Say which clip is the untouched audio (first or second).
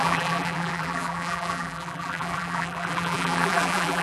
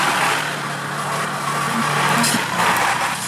second